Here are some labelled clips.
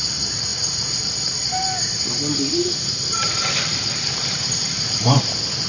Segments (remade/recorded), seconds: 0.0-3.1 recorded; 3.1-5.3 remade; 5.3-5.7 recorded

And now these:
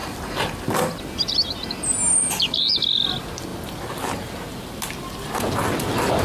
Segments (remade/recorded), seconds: 0.0-1.3 remade; 1.3-2.2 recorded; 2.2-3.1 remade; 3.1-6.2 recorded

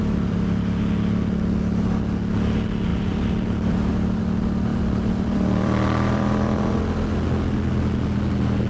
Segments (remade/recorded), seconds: 0.0-2.9 recorded; 2.9-4.2 remade; 4.2-4.7 recorded; 4.7-6.8 remade; 6.8-8.7 recorded

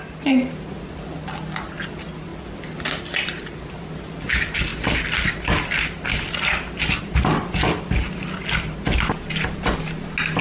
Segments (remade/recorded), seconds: 0.0-10.4 recorded

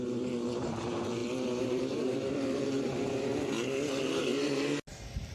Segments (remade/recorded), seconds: 0.0-3.3 remade; 3.3-5.3 recorded